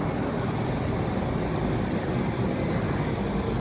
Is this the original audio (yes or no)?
yes